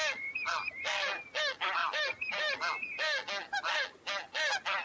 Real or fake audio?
real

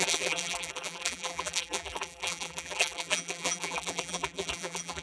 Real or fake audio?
fake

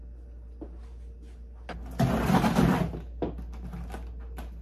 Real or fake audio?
real